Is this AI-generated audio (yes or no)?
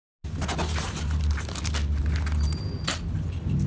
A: no